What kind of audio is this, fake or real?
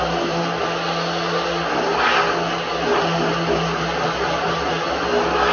real